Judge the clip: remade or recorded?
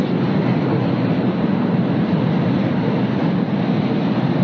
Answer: recorded